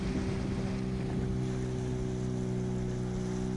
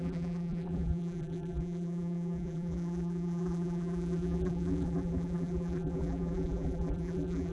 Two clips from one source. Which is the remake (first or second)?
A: second